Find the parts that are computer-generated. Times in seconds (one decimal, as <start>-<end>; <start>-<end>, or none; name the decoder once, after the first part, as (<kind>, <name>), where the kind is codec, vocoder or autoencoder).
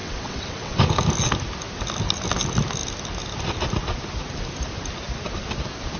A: 0.0-0.8 (vocoder, WaveNeXt)